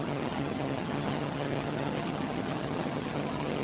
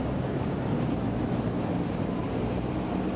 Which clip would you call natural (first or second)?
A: second